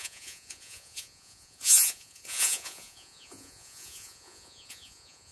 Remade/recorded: remade